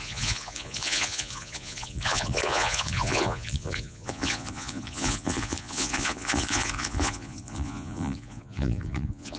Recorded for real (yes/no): no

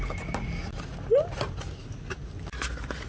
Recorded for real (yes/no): yes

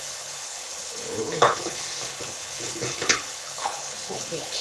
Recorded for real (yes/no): no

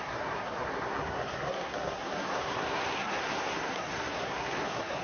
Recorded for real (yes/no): no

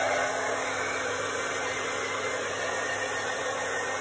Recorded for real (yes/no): yes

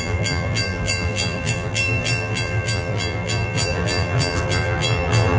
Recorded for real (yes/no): no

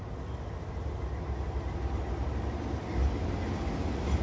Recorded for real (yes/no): yes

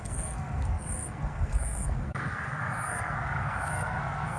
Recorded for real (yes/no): no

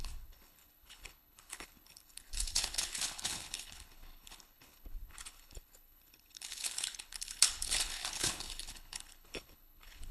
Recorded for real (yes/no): no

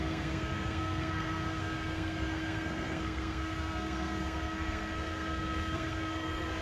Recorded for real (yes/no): no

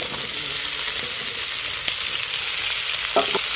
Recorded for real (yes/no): yes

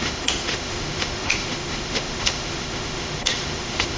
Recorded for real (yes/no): no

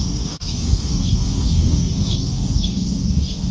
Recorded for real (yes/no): no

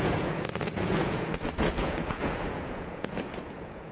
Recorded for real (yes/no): no